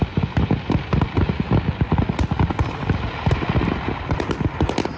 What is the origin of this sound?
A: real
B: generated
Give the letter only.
A